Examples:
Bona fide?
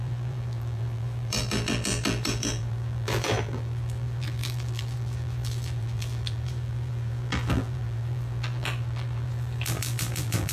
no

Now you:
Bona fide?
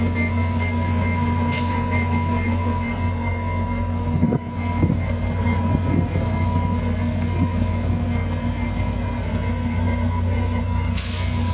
no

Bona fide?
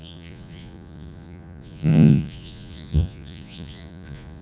no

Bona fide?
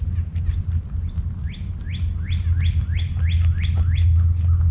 yes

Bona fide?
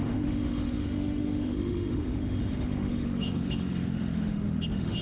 no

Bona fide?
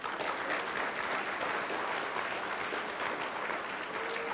yes